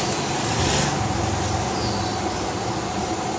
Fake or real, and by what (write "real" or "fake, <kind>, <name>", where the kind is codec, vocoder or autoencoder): real